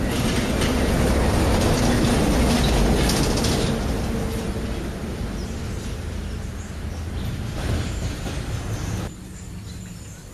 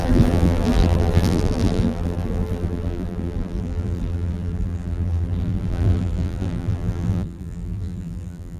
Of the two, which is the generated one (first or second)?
second